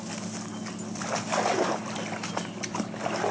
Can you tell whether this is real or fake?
real